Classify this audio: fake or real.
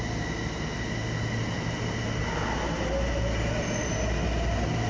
real